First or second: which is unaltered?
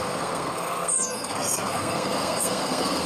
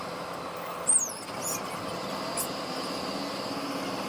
second